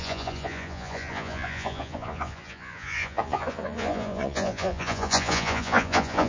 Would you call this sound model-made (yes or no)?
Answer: yes